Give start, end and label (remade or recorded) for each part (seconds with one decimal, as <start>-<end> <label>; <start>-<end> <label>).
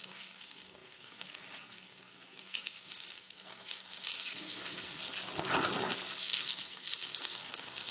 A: 0.0-5.0 remade; 5.0-6.2 recorded; 6.2-7.9 remade